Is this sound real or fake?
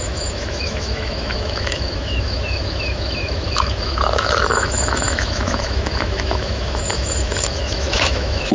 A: fake